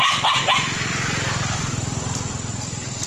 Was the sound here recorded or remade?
remade